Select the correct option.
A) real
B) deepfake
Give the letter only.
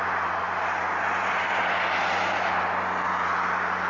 A